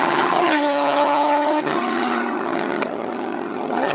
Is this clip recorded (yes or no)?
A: no